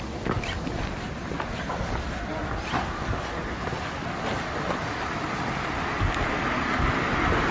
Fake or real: real